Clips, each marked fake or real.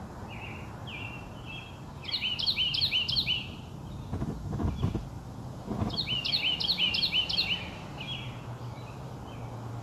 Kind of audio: real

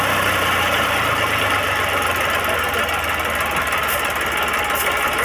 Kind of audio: real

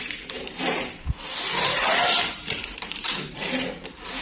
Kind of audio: fake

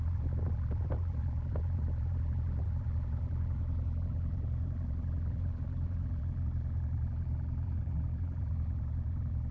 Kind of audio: fake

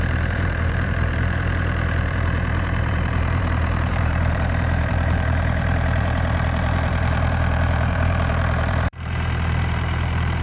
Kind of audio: fake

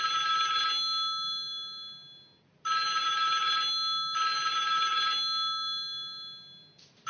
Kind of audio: real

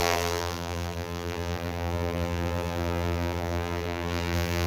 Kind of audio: fake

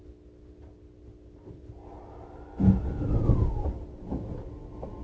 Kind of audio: real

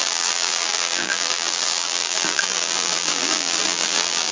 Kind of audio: fake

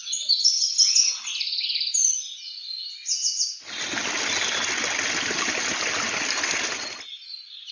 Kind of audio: real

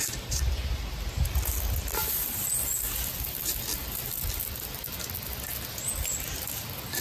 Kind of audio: real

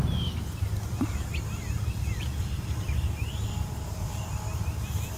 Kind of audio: real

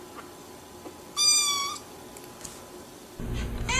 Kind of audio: real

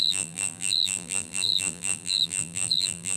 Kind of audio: fake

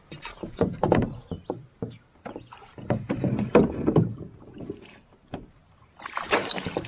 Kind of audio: fake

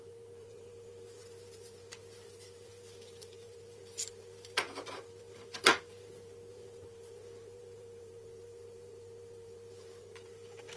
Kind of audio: fake